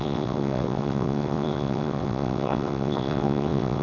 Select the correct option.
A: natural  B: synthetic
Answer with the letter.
B